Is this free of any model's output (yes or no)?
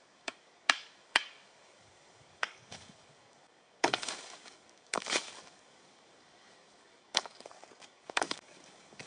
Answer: no